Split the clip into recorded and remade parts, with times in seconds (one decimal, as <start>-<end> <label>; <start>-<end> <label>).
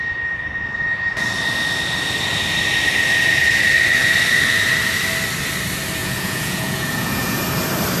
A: 0.0-6.0 recorded; 6.0-7.4 remade; 7.4-8.0 recorded